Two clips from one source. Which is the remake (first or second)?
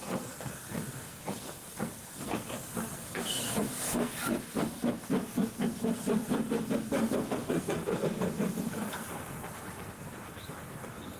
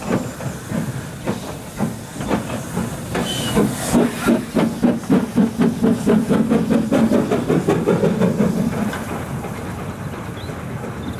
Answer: first